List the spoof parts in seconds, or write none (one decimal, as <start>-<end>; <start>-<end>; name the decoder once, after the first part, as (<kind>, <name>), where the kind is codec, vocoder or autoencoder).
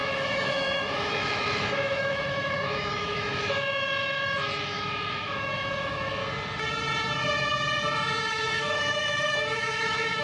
0.0-6.2 (autoencoder, DAC-VAE); 8.3-10.2